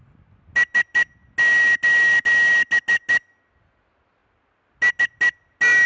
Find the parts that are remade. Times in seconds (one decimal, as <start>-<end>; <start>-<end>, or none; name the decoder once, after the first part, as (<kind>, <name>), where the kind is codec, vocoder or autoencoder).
none